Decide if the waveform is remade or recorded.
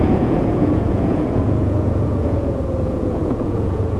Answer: remade